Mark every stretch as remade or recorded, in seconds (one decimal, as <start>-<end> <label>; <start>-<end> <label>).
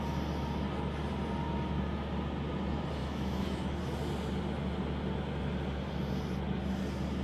0.0-3.0 recorded; 3.0-3.8 remade; 3.8-7.2 recorded